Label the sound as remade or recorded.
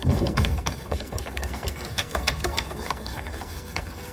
remade